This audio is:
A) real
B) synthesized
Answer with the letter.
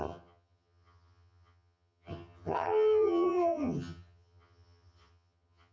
B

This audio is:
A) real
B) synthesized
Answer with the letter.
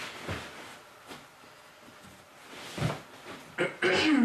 A